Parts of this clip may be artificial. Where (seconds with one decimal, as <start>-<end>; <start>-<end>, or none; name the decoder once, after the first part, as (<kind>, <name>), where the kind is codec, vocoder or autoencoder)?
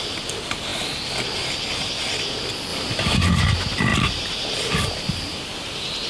3.9-5.4 (vocoder, BigVGAN v2)